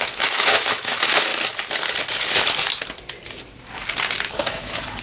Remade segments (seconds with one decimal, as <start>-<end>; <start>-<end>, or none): 0.0-1.3; 4.3-5.0